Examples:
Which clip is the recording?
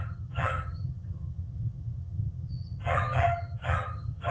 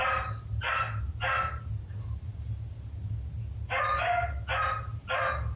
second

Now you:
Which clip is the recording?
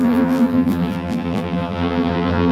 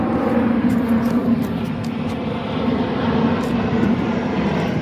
second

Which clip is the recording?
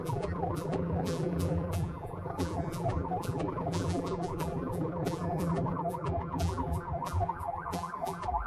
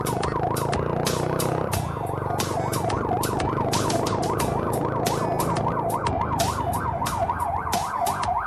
second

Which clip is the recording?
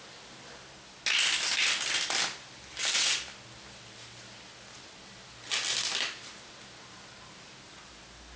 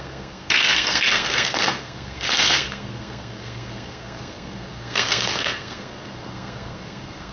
first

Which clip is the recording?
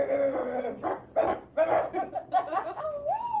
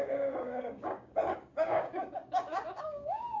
first